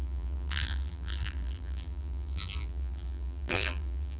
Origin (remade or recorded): remade